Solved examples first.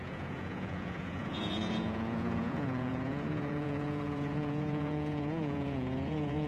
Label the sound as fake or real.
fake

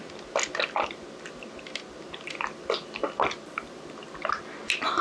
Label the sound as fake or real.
real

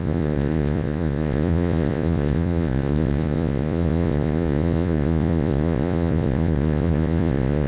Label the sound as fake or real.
fake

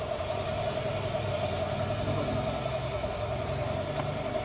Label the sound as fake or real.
real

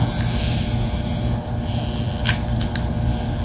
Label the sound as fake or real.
real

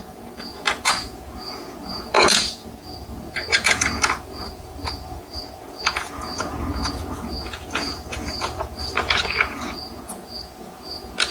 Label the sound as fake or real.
fake